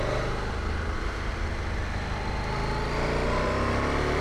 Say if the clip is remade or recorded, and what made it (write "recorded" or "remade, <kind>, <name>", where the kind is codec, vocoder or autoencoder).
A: recorded